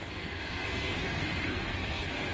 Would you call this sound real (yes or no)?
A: no